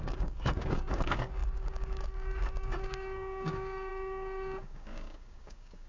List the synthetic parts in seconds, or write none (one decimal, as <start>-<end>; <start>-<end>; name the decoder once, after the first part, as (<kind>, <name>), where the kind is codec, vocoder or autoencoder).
0.0-5.9 (codec, DAC)